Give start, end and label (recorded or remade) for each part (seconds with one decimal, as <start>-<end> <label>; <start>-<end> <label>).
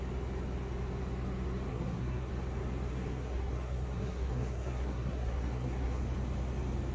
0.0-1.7 recorded; 1.7-2.3 remade; 2.3-2.9 recorded; 2.9-6.0 remade; 6.0-6.9 recorded